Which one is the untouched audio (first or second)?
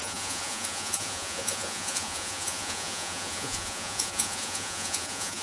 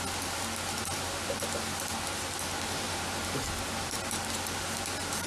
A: second